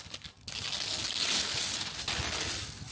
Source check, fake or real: real